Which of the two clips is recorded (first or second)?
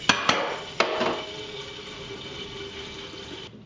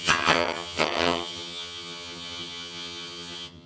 first